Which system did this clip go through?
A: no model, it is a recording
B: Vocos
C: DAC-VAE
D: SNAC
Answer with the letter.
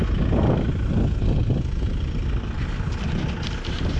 A